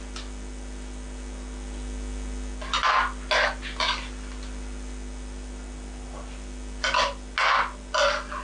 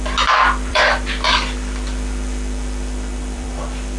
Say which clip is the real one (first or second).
first